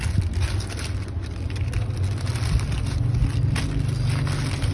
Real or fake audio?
real